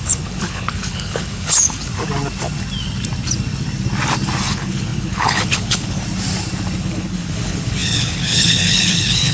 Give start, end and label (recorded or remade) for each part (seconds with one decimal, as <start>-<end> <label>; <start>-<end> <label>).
0.0-1.9 remade; 1.9-4.5 recorded; 4.5-6.0 remade; 6.0-6.8 recorded; 6.8-9.3 remade